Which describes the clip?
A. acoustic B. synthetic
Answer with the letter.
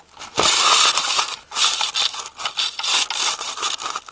A